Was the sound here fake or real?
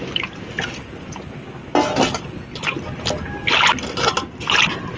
real